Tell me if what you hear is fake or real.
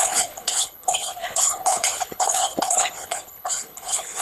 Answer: fake